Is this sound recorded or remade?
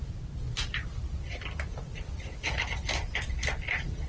recorded